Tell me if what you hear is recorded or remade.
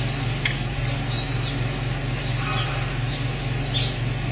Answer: recorded